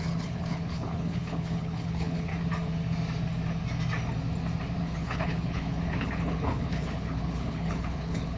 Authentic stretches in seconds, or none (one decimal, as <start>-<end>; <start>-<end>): 2.3-4.8